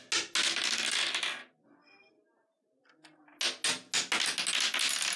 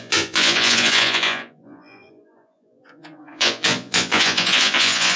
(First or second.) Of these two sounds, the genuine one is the first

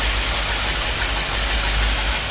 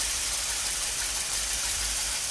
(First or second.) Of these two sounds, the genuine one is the first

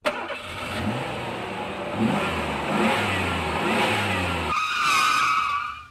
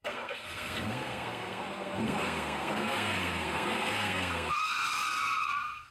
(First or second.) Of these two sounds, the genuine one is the first